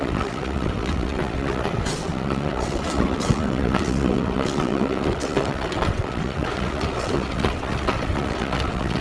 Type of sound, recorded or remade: remade